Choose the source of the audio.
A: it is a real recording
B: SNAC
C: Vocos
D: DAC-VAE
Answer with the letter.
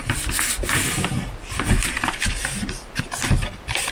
A